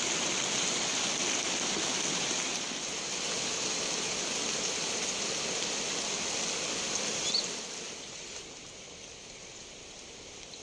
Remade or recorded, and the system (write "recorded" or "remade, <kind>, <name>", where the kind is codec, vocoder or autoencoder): recorded